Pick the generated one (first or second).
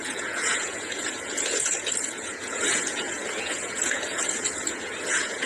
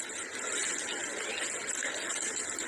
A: first